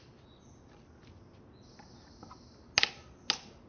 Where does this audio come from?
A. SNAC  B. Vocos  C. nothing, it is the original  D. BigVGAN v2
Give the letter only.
C